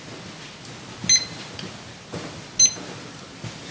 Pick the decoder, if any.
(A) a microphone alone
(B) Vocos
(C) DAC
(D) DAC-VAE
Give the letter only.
A